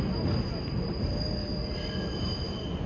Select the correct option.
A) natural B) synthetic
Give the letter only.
A